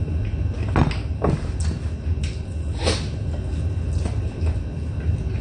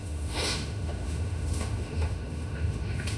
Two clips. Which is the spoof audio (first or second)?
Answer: second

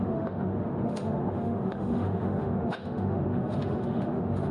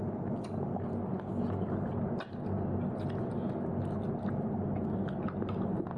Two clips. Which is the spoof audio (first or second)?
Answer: first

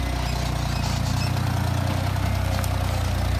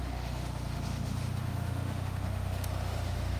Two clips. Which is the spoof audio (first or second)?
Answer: second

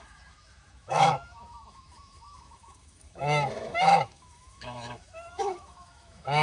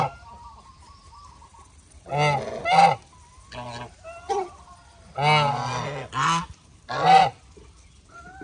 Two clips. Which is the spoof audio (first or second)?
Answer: first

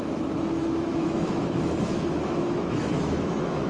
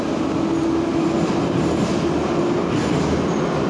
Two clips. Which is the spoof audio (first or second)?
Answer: first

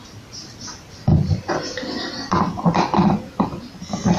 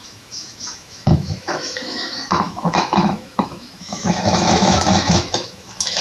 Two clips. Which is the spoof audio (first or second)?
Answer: second